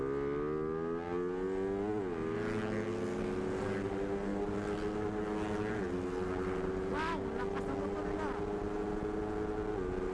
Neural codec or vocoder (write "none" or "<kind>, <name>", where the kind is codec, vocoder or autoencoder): none